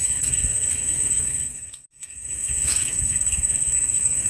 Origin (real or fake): fake